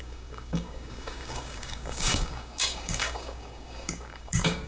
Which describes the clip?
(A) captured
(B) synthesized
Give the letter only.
B